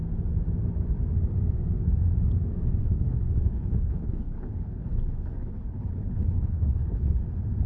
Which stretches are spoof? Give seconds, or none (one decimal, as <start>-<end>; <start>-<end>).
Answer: 2.8-7.2